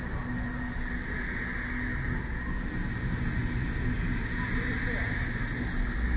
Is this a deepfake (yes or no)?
no